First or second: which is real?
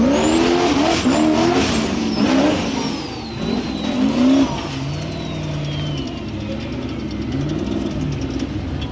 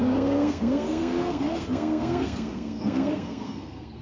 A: first